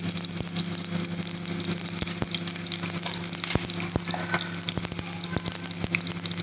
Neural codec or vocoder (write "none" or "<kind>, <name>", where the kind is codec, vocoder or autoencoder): none